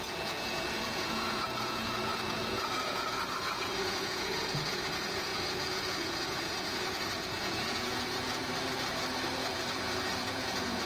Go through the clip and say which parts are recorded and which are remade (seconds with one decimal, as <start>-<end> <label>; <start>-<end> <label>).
0.0-8.5 remade; 8.5-9.7 recorded; 9.7-10.9 remade